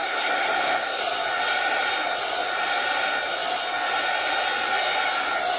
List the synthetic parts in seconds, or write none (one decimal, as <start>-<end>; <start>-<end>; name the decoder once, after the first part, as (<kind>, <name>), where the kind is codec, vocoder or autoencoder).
0.0-1.0 (codec, SNAC)